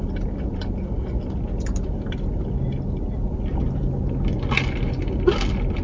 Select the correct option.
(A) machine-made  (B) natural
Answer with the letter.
B